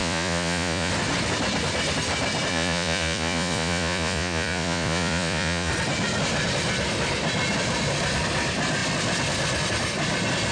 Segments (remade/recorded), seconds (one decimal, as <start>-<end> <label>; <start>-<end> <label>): 0.0-0.9 remade; 0.9-2.5 recorded; 2.5-5.7 remade; 5.7-10.5 recorded